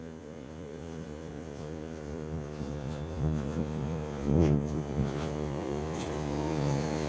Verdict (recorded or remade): remade